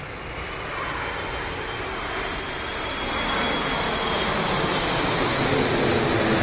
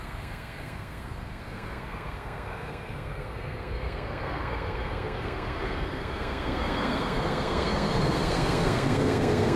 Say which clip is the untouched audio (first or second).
first